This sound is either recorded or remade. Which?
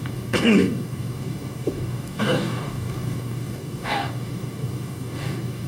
remade